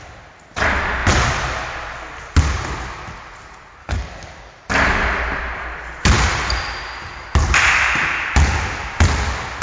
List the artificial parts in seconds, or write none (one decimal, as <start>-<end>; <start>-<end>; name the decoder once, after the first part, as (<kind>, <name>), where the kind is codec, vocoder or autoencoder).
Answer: 3.8-4.6 (codec, DAC)